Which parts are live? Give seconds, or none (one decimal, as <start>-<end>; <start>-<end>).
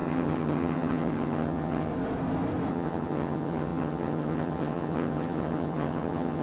1.9-2.7